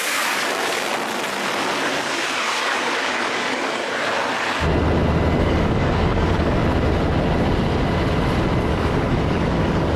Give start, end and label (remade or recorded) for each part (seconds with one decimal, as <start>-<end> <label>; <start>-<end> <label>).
0.0-0.9 remade; 0.9-1.9 recorded; 1.9-3.8 remade; 3.8-5.4 recorded; 5.4-6.6 remade; 6.6-8.7 recorded; 8.7-10.0 remade